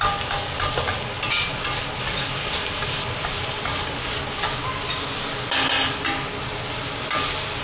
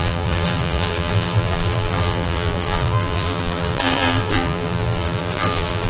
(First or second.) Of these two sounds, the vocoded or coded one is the second